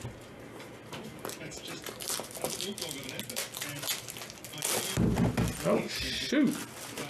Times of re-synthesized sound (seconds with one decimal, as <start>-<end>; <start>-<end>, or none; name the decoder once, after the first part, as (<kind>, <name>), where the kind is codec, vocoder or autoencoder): none